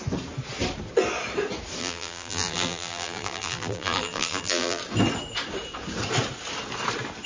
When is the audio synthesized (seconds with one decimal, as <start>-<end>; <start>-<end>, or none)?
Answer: 1.8-4.8